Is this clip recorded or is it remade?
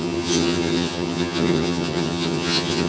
remade